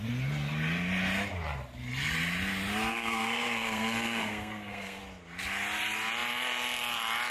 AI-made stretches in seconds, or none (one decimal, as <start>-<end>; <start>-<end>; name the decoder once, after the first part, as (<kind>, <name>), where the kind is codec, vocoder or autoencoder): 2.9-5.0 (codec, SNAC)